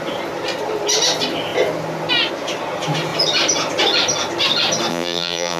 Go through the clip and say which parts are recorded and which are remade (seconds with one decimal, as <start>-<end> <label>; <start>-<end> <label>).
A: 0.0-4.9 recorded; 4.9-5.6 remade